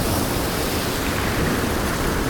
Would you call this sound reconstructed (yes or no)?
no